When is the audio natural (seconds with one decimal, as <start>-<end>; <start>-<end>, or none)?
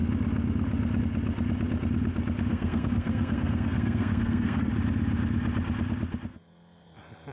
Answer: 0.0-2.5; 4.7-7.3